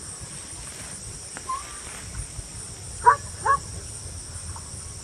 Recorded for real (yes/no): yes